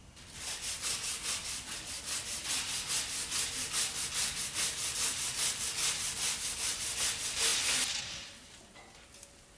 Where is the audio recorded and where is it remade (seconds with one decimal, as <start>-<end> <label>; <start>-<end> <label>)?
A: 0.0-9.6 recorded